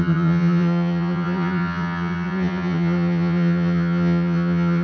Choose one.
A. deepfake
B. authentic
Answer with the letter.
A